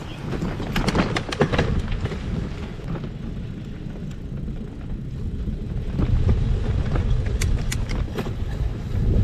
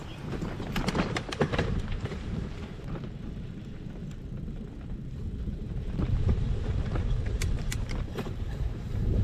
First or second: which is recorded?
first